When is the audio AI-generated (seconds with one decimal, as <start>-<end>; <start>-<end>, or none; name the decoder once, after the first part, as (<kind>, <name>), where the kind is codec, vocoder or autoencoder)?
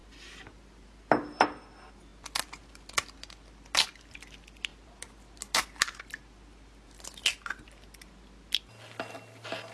none